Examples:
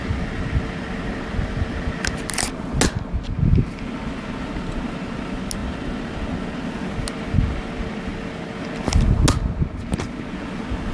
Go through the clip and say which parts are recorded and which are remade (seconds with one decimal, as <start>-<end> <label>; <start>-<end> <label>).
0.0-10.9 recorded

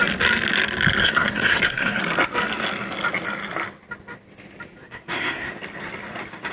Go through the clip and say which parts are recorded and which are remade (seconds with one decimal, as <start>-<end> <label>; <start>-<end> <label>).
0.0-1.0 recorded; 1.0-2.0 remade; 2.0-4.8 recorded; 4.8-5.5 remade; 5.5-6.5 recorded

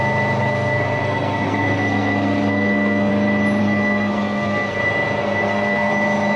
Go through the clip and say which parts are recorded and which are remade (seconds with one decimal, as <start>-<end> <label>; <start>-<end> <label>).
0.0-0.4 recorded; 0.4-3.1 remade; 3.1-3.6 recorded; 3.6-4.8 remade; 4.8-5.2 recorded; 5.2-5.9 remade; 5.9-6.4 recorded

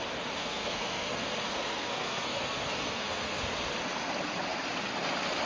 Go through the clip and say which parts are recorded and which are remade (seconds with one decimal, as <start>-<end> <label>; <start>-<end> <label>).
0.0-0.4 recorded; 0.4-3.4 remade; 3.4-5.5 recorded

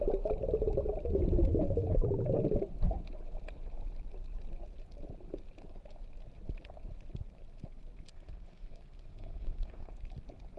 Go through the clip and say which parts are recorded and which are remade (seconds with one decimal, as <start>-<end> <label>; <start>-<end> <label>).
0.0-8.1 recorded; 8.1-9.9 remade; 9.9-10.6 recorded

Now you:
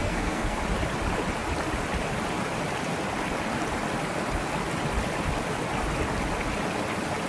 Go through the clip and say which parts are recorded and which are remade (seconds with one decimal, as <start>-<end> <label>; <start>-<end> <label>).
0.0-0.6 remade; 0.6-7.3 recorded